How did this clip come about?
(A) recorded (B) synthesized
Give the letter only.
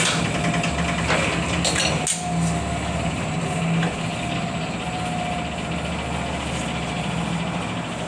A